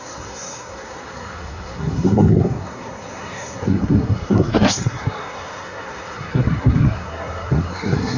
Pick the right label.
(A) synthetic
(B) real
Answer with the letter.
A